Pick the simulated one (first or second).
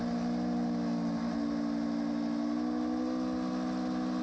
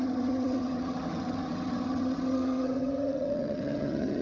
second